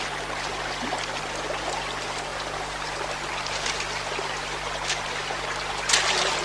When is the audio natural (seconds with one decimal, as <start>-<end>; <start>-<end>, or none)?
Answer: 0.0-6.4